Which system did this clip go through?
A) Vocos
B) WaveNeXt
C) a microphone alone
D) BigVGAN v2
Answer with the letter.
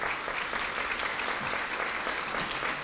C